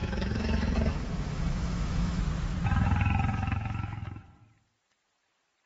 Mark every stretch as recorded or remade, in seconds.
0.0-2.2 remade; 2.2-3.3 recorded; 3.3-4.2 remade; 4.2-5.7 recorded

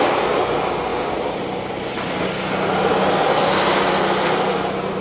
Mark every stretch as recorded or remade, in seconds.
0.0-5.0 recorded

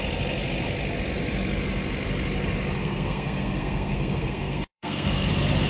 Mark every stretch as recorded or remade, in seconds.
0.0-2.8 recorded; 2.8-5.3 remade; 5.3-5.7 recorded

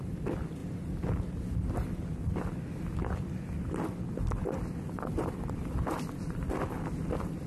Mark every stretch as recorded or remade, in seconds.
0.0-0.6 remade; 0.6-2.0 recorded; 2.0-7.5 remade